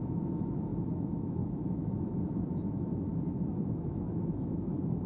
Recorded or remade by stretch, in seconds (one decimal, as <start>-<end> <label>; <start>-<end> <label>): 0.0-5.1 remade